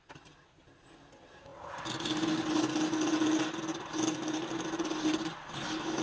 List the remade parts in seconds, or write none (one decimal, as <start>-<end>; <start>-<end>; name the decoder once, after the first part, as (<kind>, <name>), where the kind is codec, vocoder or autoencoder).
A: none